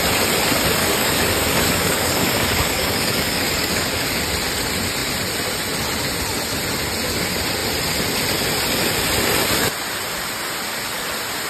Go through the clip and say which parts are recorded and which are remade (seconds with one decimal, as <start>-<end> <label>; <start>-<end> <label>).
0.0-0.8 recorded; 0.8-4.2 remade; 4.2-11.5 recorded